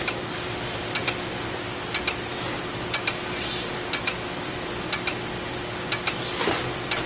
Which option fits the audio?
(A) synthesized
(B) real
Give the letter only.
B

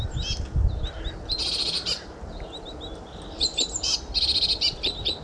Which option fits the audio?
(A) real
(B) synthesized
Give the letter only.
A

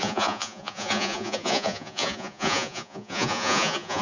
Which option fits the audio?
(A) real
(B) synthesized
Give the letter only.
B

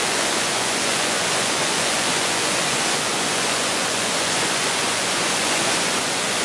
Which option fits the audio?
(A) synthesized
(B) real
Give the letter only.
A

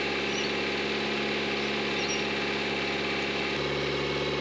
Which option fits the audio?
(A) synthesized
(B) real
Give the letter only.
B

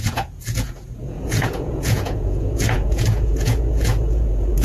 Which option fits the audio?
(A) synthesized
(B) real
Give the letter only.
A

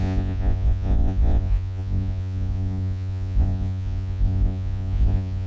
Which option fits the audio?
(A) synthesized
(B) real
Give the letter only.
A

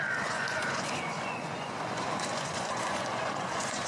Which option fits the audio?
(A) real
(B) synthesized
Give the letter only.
B